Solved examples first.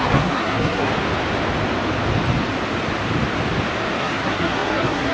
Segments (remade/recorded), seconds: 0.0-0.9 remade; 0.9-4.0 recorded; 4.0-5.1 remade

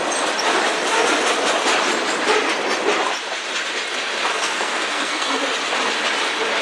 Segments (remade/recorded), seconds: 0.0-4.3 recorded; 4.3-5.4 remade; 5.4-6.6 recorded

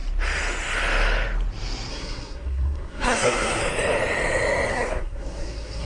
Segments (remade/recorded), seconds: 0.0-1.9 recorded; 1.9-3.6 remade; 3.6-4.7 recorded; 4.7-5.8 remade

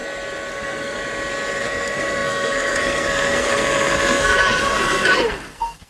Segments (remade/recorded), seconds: 0.0-0.5 recorded; 0.5-1.0 remade; 1.0-1.6 recorded; 1.6-5.9 remade

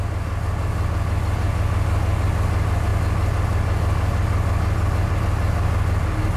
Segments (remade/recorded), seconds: 0.0-6.4 recorded

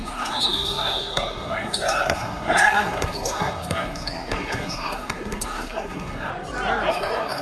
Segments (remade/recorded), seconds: 0.0-6.3 remade; 6.3-6.9 recorded; 6.9-7.4 remade